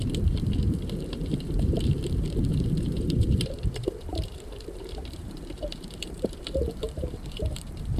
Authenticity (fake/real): fake